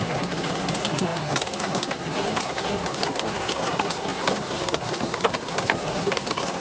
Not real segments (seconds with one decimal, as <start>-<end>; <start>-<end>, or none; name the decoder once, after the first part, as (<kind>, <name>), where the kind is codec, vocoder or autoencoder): 0.0-6.6 (codec, SNAC)